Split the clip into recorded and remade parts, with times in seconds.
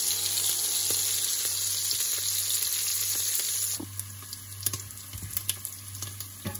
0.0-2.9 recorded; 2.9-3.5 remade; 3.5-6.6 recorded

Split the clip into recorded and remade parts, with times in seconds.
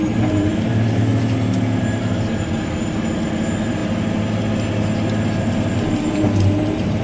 0.0-1.1 remade; 1.1-1.8 recorded; 1.8-3.8 remade; 3.8-5.4 recorded; 5.4-7.0 remade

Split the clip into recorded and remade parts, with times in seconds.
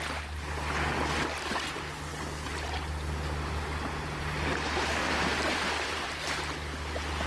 0.0-5.0 recorded; 5.0-6.1 remade; 6.1-7.3 recorded